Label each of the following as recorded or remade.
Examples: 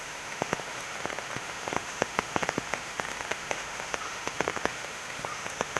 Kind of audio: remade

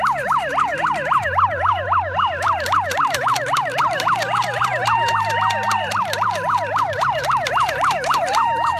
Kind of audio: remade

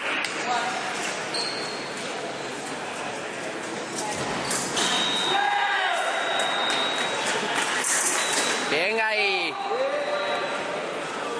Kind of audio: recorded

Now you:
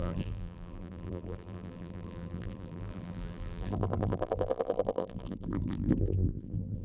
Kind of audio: remade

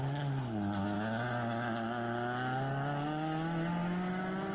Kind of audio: recorded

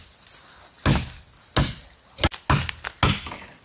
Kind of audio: recorded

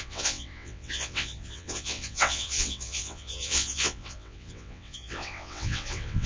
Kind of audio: remade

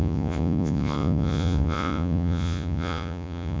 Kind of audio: remade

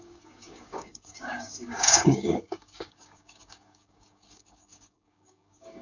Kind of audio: remade